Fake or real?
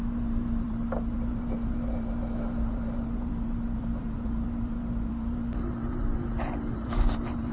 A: fake